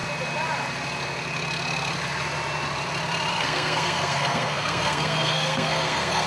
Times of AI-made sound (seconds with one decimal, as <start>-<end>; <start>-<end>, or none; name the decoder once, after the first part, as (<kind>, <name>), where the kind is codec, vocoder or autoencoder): 3.3-6.3 (codec, SNAC)